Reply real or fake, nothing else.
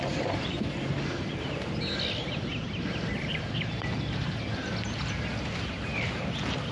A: real